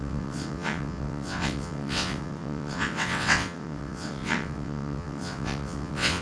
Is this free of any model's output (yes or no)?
no